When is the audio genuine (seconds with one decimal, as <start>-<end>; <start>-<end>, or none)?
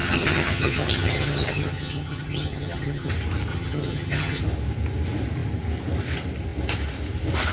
3.1-3.5; 4.4-7.5